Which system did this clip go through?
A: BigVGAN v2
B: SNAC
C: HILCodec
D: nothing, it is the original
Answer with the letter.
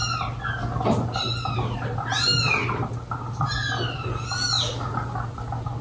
D